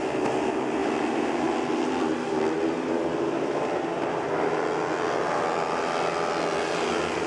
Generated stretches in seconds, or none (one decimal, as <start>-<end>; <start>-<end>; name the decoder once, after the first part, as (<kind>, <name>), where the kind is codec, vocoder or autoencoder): none